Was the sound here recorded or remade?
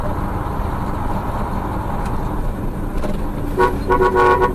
recorded